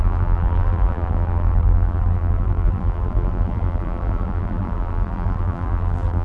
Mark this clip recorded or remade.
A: remade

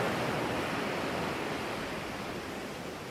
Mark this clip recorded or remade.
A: recorded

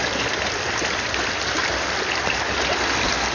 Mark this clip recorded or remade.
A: recorded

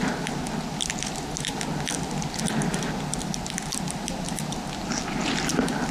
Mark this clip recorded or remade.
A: recorded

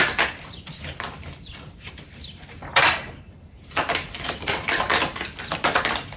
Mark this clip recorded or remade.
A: remade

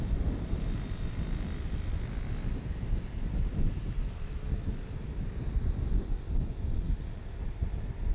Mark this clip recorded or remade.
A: recorded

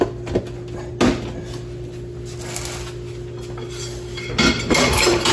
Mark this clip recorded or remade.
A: recorded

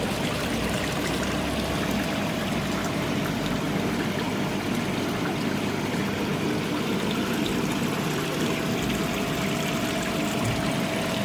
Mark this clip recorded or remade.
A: recorded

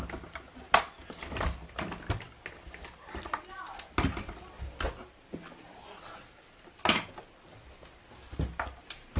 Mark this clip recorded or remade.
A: recorded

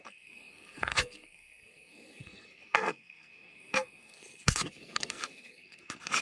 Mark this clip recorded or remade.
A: remade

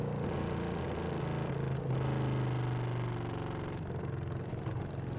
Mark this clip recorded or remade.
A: recorded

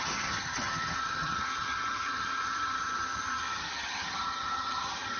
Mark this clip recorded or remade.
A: remade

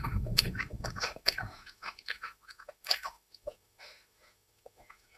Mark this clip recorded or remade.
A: remade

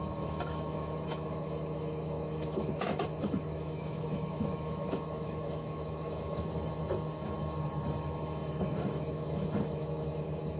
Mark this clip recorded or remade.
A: remade